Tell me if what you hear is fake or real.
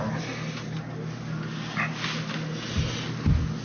real